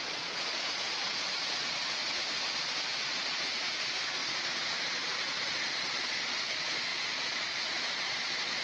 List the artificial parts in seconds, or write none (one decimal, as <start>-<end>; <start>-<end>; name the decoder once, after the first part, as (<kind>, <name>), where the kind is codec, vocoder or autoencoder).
0.0-2.0 (vocoder, Vocos); 3.0-8.6